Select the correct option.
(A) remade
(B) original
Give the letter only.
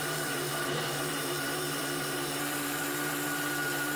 A